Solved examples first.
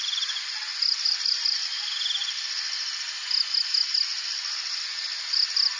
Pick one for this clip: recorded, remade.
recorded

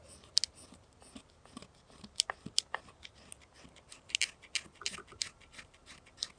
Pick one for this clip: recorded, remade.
recorded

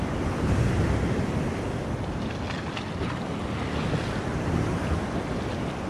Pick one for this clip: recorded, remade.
recorded